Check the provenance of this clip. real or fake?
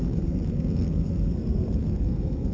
fake